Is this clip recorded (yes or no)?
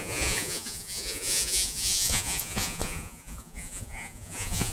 no